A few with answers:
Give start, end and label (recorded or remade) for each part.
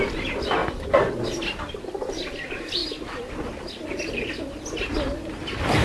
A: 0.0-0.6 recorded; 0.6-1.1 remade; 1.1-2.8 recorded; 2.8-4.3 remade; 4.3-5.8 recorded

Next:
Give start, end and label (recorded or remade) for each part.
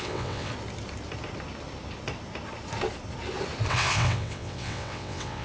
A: 0.0-0.5 remade; 0.5-3.7 recorded; 3.7-5.4 remade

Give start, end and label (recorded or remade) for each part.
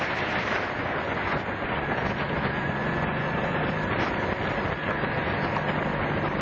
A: 0.0-0.8 recorded; 0.8-3.7 remade; 3.7-4.8 recorded; 4.8-5.5 remade; 5.5-6.4 recorded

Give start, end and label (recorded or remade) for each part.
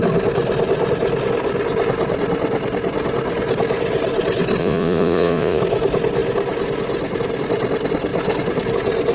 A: 0.0-4.6 recorded; 4.6-5.6 remade; 5.6-9.1 recorded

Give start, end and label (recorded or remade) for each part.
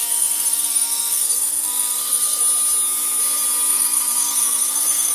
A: 0.0-2.4 remade; 2.4-3.7 recorded; 3.7-5.1 remade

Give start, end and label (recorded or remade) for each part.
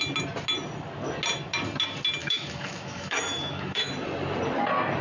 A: 0.0-2.2 recorded; 2.2-3.9 remade; 3.9-5.0 recorded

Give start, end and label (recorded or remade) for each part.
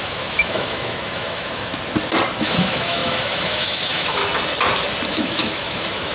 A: 0.0-1.7 remade; 1.7-2.4 recorded; 2.4-4.2 remade; 4.2-5.1 recorded; 5.1-6.1 remade